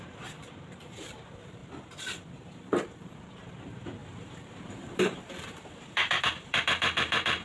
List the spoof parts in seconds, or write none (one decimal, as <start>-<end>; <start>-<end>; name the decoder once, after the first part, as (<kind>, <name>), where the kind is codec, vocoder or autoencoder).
0.0-1.6 (vocoder, BigVGAN v2); 2.3-7.4